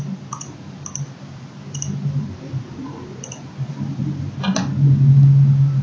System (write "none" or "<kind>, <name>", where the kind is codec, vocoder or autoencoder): none